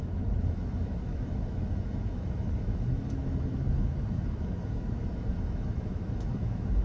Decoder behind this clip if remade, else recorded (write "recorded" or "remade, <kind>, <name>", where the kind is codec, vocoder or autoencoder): remade, autoencoder, DAC-VAE